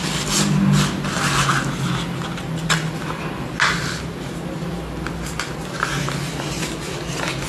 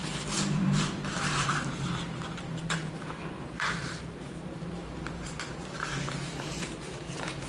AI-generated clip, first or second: second